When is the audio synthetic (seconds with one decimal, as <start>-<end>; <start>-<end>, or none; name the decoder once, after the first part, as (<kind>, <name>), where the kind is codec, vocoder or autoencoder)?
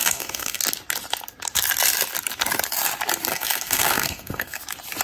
0.0-0.6 (codec, SNAC); 3.3-4.6